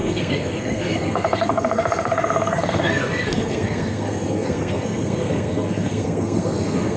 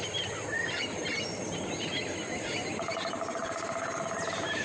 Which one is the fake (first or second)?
first